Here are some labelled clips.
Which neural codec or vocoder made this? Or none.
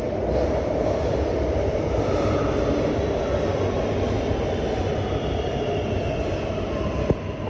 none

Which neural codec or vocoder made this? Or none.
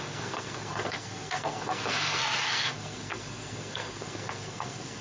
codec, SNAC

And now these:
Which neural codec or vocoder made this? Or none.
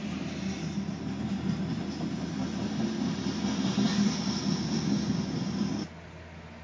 none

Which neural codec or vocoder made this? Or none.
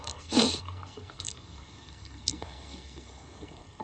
codec, SNAC